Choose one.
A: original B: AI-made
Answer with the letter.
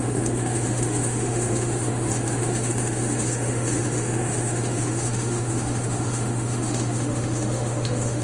B